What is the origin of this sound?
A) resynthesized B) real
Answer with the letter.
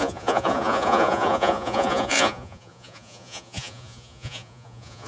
A